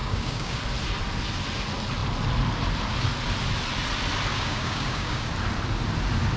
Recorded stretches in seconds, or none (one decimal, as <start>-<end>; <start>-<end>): 0.6-4.3; 5.3-6.4